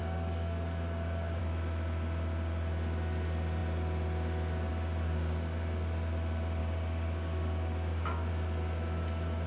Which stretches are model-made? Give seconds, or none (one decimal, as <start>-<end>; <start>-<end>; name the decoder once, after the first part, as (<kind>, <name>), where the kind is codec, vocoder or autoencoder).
0.0-1.4 (codec, DAC); 6.6-8.3